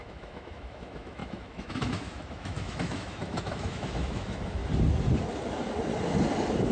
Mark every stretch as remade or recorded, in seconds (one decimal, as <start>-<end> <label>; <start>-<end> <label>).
0.0-4.6 remade; 4.6-6.7 recorded